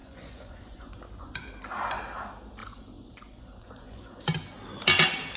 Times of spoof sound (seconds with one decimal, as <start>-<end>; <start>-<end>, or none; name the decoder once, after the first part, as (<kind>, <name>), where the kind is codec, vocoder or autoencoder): 0.0-1.3 (vocoder, Vocos); 2.6-4.2